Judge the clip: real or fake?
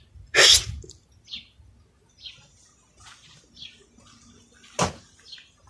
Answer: real